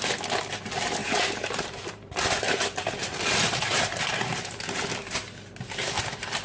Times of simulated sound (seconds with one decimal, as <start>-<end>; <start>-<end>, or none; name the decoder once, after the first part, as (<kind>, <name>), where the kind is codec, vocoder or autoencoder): 1.0-4.8 (vocoder, BigVGAN v2)